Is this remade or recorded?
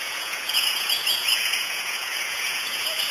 remade